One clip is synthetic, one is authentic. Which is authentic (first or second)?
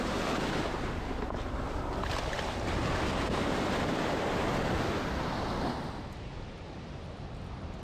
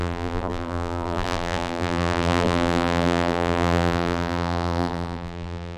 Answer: first